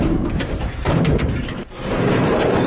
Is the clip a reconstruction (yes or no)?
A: yes